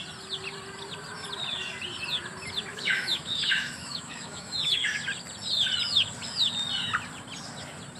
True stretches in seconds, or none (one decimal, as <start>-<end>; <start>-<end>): 0.0-2.7; 5.0-8.0